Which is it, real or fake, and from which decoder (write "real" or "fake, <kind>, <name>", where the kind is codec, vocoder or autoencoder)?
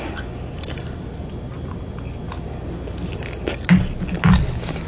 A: real